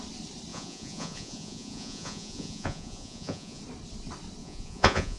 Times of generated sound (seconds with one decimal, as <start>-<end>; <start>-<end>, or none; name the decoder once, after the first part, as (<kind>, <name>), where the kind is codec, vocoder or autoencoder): 0.5-3.6 (vocoder, Vocos); 4.4-5.2